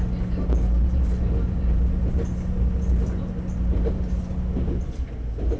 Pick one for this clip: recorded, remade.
recorded